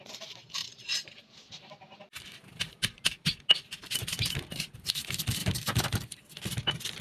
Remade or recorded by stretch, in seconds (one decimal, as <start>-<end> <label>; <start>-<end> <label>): 0.0-7.0 recorded